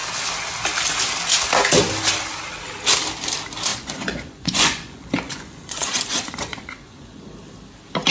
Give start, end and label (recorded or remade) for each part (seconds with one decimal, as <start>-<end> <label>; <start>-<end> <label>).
0.0-3.7 recorded; 3.7-7.2 remade; 7.2-8.1 recorded